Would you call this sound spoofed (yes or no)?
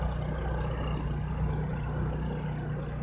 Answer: no